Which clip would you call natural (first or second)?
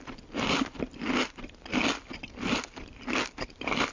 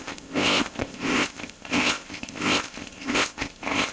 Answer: first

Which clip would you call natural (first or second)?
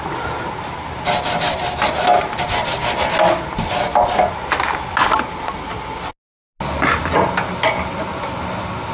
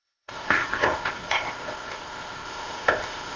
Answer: first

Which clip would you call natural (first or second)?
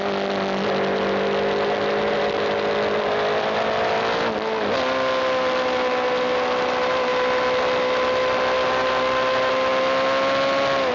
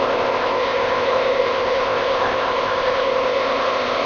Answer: first